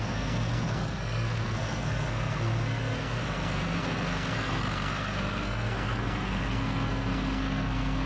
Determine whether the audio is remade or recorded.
remade